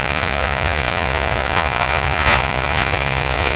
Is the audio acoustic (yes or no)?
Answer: no